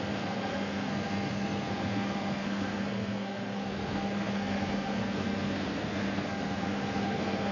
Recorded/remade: remade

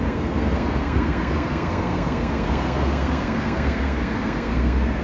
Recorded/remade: remade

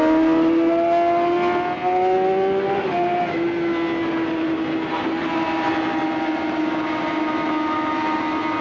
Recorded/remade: recorded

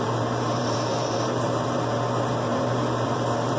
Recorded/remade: remade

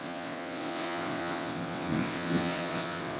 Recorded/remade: remade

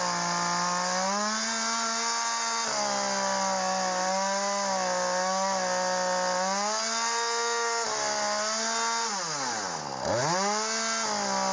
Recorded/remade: recorded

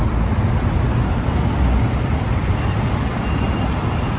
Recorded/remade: recorded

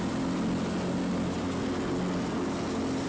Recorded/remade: recorded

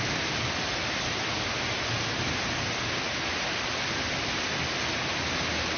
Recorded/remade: recorded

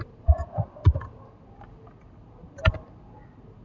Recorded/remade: recorded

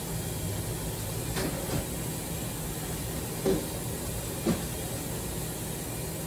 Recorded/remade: recorded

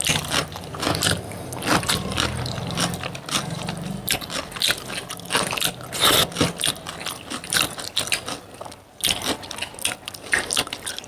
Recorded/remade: recorded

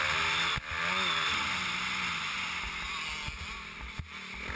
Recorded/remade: recorded